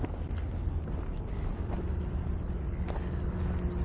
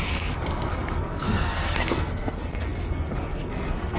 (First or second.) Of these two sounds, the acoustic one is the first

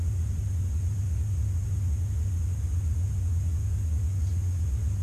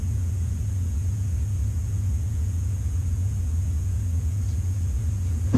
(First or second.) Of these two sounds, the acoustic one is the first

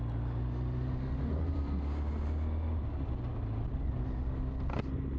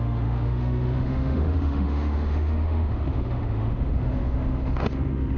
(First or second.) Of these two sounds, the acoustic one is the first